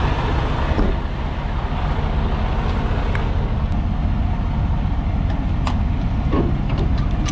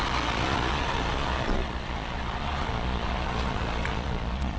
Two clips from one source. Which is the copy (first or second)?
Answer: second